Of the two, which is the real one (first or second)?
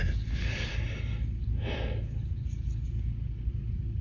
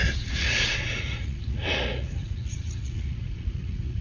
first